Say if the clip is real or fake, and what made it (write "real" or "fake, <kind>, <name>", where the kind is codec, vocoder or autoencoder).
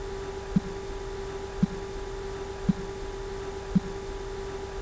real